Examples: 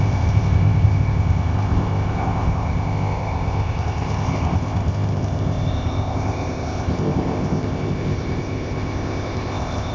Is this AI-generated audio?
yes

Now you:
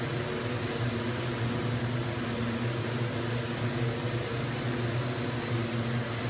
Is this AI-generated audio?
no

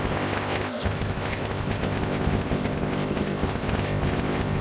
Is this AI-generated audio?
yes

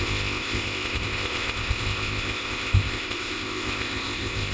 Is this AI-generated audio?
yes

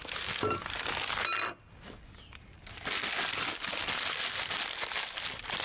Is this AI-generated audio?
no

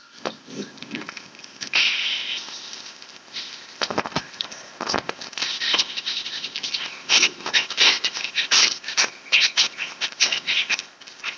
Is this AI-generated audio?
yes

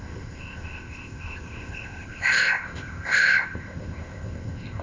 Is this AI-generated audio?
yes